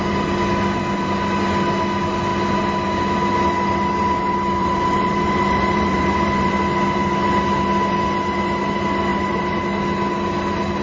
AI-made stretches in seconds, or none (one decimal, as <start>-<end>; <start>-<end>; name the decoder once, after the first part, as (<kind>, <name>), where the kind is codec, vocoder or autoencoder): 4.6-6.5 (vocoder, BigVGAN v2); 9.1-9.6